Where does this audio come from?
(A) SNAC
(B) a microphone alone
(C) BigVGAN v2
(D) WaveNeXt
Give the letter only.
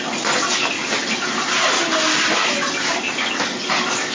B